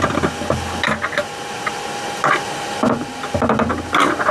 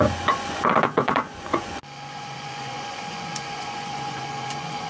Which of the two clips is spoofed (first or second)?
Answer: second